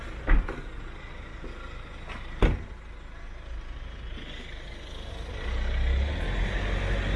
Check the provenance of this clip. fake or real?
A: real